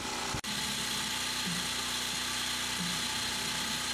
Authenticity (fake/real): real